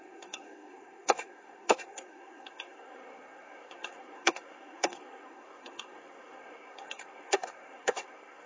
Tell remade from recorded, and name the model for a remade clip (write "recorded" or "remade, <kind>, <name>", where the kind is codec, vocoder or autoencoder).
remade, codec, SNAC